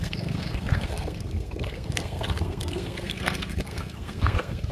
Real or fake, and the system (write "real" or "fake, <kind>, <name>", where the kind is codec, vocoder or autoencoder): fake, codec, SNAC